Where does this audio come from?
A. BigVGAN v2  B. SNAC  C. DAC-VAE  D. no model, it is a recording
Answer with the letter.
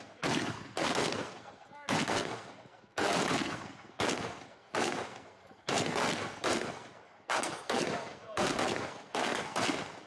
B